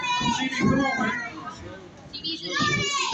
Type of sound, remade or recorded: recorded